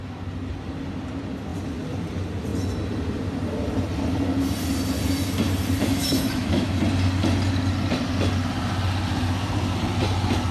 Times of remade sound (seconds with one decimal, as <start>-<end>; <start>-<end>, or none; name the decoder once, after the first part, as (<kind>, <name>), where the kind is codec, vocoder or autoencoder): 5.8-6.8 (autoencoder, DAC-VAE)